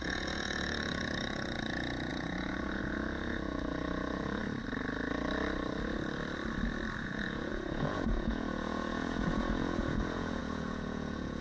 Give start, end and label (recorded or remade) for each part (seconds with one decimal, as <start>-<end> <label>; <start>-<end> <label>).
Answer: 0.0-4.4 remade; 4.4-7.0 recorded; 7.0-11.4 remade